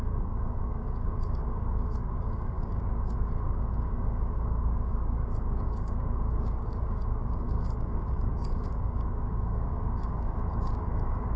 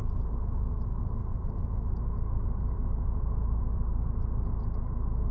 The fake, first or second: first